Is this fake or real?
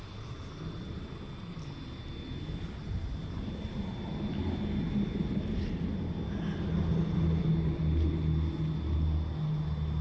real